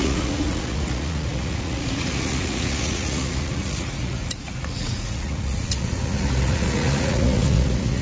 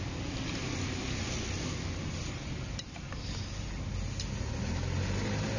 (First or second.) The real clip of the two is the second